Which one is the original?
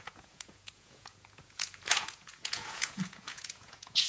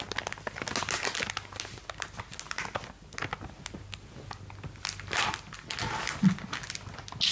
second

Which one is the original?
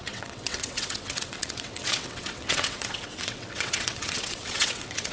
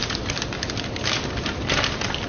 second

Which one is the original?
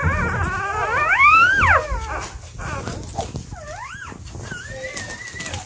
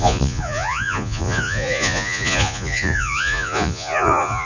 first